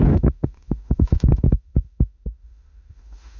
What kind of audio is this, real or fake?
fake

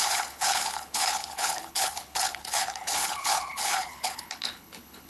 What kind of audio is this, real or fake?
fake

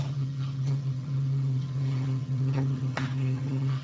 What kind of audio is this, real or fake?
fake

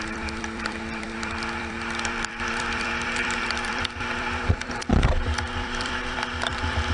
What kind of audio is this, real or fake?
fake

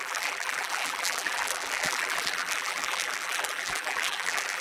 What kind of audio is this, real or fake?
fake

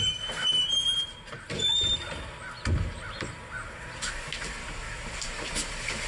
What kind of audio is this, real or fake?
real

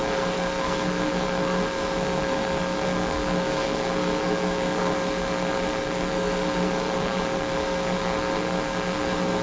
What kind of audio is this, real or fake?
fake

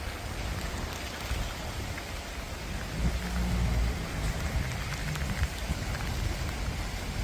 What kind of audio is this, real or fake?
real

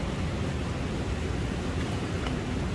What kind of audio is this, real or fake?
real